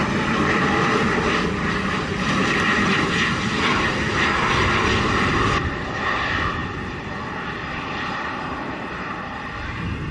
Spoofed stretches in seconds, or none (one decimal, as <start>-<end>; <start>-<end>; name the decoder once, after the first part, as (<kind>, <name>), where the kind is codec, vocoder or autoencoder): 0.0-1.5 (vocoder, BigVGAN v2); 6.6-9.5